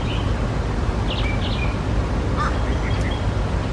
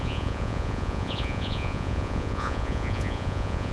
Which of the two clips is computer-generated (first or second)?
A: second